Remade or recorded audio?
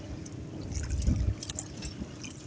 recorded